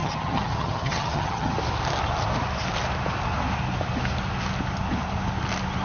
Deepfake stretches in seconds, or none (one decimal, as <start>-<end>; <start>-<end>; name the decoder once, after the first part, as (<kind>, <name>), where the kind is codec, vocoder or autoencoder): 0.0-1.5 (vocoder, HiFi-GAN)

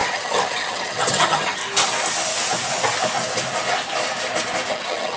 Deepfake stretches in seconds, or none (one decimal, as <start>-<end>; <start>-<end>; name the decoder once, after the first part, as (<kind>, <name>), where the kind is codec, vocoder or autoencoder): 0.0-1.6 (vocoder, HiFi-GAN); 4.7-5.2

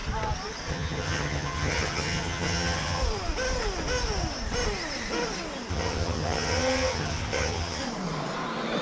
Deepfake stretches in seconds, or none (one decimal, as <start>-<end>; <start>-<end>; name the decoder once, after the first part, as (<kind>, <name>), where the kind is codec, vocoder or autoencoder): 0.7-3.0 (vocoder, HiFi-GAN); 5.7-7.8

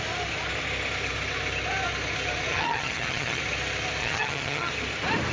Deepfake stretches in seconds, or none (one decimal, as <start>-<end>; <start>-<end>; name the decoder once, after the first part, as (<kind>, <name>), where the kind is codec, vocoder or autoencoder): 2.5-3.4 (vocoder, HiFi-GAN); 4.0-4.7

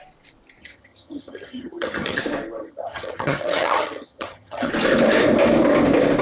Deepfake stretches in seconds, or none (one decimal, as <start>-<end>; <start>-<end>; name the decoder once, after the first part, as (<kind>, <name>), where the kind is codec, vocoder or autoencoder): 0.6-2.2 (vocoder, HiFi-GAN); 2.6-4.7

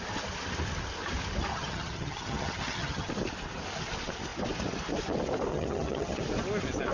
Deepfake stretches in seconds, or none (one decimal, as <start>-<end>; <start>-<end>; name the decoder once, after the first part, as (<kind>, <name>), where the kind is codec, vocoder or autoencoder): 1.5-3.1 (vocoder, HiFi-GAN); 5.5-6.2

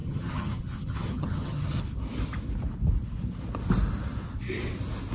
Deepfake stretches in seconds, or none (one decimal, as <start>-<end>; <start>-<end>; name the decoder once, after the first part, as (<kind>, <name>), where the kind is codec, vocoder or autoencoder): 0.0-1.8 (vocoder, HiFi-GAN)

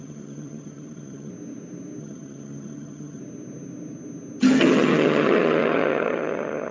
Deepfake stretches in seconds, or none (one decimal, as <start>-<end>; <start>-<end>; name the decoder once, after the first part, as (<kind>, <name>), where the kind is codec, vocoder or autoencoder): 0.0-1.3 (vocoder, HiFi-GAN); 2.0-3.2; 4.4-6.7